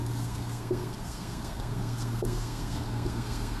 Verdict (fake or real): fake